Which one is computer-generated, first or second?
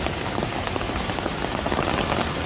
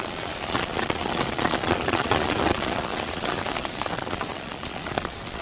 second